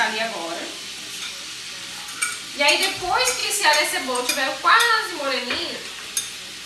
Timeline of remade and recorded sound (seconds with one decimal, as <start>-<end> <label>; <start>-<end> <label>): 0.0-6.7 recorded